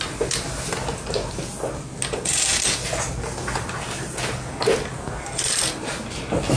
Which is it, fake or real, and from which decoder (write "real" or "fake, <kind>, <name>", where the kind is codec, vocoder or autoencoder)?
real